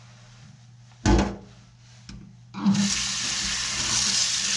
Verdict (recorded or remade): recorded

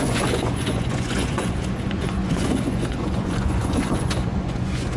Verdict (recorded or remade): remade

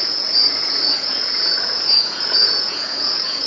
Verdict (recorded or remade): remade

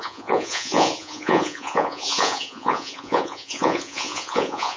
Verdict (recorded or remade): remade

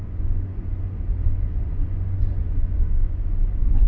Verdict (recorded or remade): remade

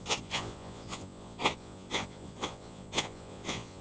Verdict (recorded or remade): remade